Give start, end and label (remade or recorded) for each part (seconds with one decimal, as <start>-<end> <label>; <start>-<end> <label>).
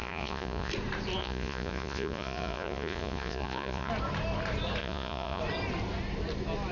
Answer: 0.0-0.7 remade; 0.7-1.2 recorded; 1.2-3.9 remade; 3.9-4.8 recorded; 4.8-5.4 remade; 5.4-6.7 recorded